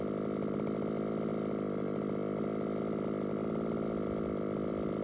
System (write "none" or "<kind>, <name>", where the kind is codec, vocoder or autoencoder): none